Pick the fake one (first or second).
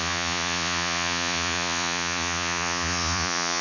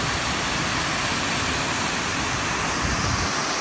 first